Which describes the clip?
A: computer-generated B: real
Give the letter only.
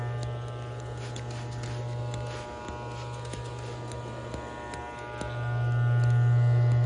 B